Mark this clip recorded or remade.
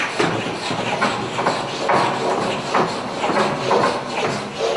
recorded